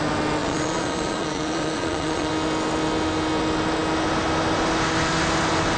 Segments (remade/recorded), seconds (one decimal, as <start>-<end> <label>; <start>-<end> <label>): 0.0-0.4 recorded; 0.4-2.3 remade; 2.3-5.8 recorded